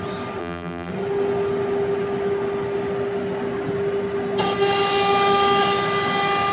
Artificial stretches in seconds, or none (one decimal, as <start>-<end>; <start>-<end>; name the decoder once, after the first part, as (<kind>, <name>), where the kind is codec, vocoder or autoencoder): 0.4-0.9 (vocoder, BigVGAN v2)